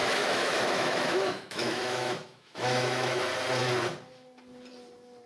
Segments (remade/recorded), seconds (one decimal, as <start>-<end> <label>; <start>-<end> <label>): 0.0-3.2 remade; 3.2-5.3 recorded